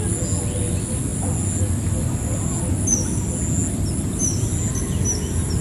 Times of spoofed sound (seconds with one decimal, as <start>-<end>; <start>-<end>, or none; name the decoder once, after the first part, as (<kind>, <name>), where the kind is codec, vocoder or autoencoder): none